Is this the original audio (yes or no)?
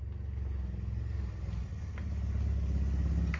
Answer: yes